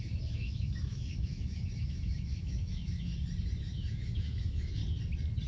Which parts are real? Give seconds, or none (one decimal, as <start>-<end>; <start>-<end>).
3.1-3.6; 4.8-5.5